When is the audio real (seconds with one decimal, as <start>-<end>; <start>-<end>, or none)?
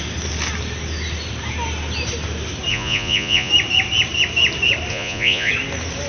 0.0-2.7; 3.5-4.9; 5.5-6.1